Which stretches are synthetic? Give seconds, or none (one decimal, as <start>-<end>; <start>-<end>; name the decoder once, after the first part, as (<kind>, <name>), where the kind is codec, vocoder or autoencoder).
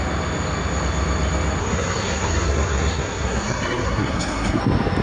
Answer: 1.6-4.6 (codec, SNAC)